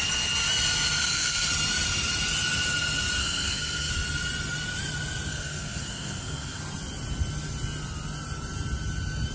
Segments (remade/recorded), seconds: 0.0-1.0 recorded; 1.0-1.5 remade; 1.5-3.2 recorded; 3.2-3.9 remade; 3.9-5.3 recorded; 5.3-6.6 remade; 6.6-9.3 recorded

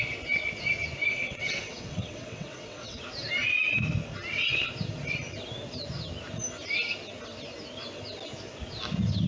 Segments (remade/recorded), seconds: 0.0-1.1 recorded; 1.1-3.0 remade; 3.0-9.3 recorded

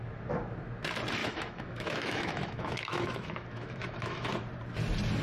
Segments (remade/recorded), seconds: 0.0-1.2 recorded; 1.2-4.3 remade; 4.3-5.2 recorded

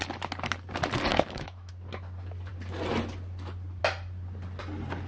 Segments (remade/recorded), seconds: 0.0-1.1 recorded; 1.1-1.7 remade; 1.7-5.1 recorded

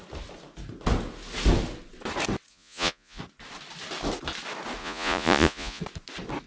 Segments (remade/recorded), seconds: 0.0-2.5 recorded; 2.5-3.2 remade; 3.2-4.8 recorded; 4.8-5.8 remade; 5.8-6.5 recorded

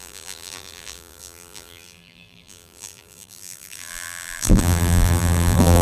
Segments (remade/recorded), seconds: 0.0-5.8 remade

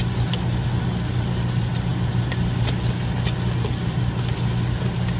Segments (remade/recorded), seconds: 0.0-5.2 recorded